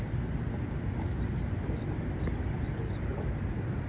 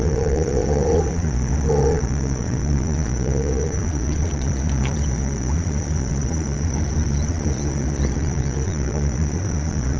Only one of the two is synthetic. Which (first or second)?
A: second